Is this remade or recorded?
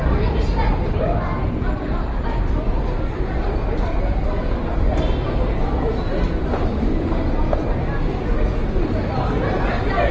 recorded